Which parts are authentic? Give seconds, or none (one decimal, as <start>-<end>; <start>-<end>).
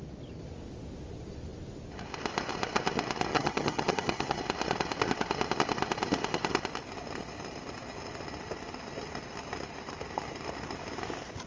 0.0-3.3; 4.4-11.5